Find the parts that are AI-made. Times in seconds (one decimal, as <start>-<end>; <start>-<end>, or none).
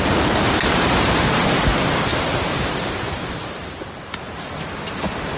0.0-1.7; 3.3-5.4